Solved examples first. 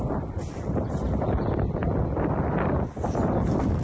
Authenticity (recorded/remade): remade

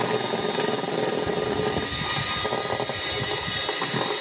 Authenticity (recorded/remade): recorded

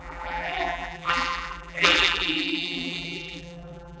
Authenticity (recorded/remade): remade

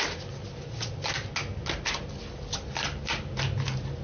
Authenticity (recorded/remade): recorded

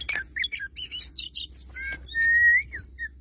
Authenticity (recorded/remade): recorded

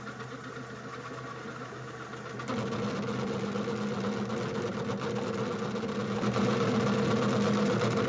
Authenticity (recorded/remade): recorded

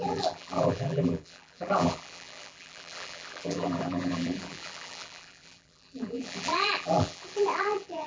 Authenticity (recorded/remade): remade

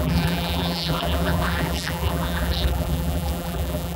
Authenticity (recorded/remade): remade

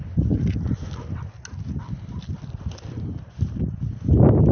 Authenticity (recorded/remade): recorded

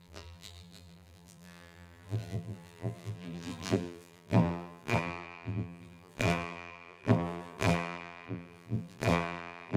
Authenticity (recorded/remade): remade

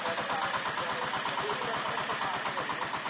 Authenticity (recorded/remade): recorded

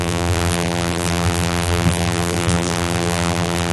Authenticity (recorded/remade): remade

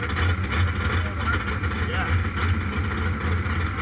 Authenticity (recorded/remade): recorded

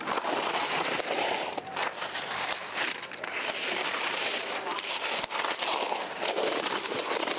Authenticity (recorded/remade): remade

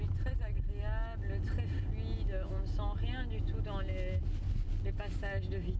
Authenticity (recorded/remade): recorded